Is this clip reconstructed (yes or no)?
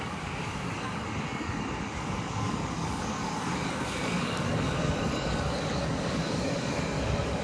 yes